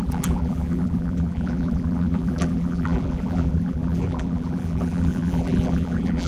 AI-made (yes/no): yes